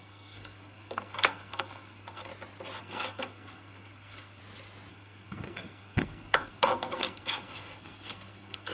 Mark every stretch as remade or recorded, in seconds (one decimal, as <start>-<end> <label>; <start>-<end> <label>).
0.0-2.3 remade; 2.3-2.8 recorded; 2.8-4.4 remade; 4.4-4.9 recorded; 4.9-8.7 remade